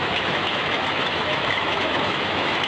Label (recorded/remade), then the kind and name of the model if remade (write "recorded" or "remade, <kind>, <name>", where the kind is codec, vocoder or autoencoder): remade, autoencoder, DAC-VAE